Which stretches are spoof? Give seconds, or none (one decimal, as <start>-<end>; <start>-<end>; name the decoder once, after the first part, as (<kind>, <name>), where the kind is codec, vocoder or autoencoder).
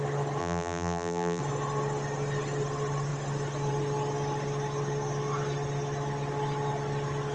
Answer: 0.4-1.4 (vocoder, BigVGAN v2)